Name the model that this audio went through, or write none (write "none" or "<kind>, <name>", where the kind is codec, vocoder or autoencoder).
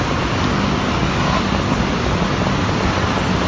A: none